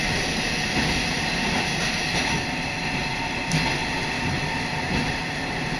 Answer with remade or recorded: recorded